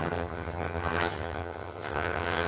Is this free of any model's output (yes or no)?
no